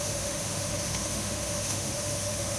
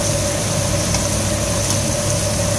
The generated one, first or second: first